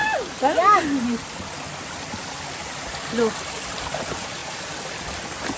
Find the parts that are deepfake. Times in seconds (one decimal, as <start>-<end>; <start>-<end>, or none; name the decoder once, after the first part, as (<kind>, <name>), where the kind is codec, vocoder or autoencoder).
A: none